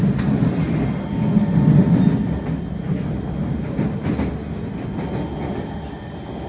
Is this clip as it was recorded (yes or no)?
yes